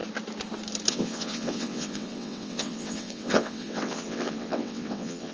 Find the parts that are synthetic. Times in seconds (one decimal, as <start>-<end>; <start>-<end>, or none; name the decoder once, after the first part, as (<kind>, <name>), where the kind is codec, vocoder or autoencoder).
0.9-5.3 (vocoder, WaveNeXt)